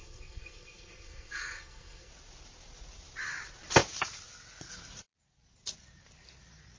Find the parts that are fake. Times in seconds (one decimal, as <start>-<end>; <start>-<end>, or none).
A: 0.0-2.1